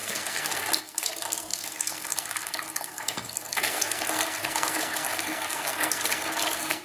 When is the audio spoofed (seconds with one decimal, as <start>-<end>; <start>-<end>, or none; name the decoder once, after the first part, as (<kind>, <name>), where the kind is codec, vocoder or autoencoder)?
0.0-6.8 (codec, SNAC)